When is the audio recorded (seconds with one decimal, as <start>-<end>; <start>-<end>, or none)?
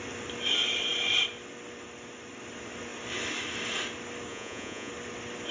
0.0-4.3; 4.9-5.5